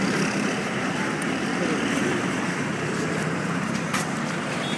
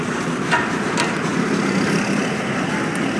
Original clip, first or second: second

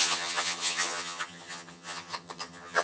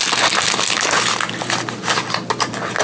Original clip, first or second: second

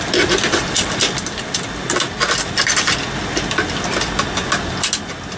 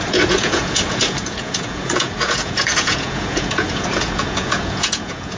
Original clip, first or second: first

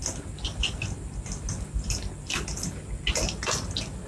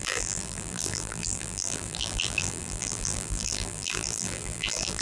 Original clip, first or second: first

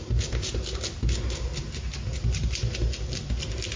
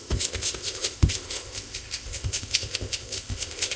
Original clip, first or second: first